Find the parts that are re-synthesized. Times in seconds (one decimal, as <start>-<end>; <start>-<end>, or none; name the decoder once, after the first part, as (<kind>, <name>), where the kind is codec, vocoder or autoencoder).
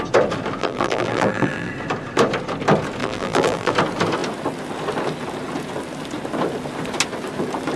0.6-1.7 (vocoder, BigVGAN v2); 3.0-3.7